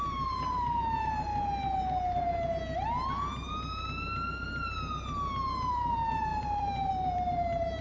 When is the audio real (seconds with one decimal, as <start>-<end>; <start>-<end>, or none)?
1.3-5.7

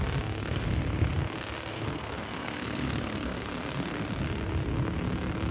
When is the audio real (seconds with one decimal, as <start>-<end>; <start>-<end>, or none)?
0.0-0.4; 1.1-1.7; 3.5-5.5

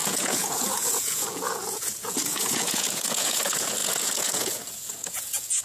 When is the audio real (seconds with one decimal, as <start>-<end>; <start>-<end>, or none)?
none

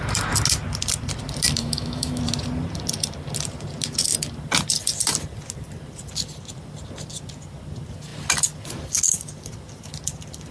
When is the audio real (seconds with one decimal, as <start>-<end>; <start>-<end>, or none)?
0.0-1.6; 2.2-10.5

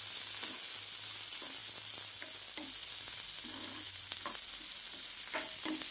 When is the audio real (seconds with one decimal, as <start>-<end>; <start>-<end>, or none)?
0.0-5.9

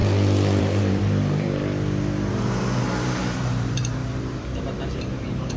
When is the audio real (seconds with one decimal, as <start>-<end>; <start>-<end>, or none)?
0.0-0.6; 1.6-2.3; 4.0-4.9

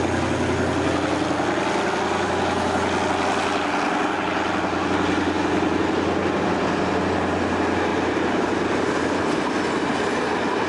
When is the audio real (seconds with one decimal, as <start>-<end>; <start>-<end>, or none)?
0.0-7.9; 9.0-10.7

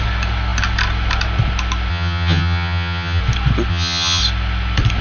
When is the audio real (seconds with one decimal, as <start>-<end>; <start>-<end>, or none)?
0.0-1.9; 3.2-3.7; 4.2-5.0